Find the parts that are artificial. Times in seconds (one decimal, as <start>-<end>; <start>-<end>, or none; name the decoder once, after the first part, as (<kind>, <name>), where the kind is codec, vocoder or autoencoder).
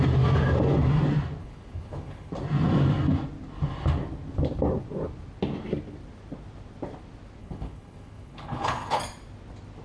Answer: 1.4-2.3 (codec, HILCodec); 7.4-9.0